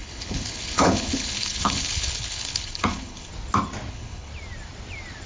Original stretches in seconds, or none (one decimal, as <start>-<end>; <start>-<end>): 3.3-3.9; 4.3-5.3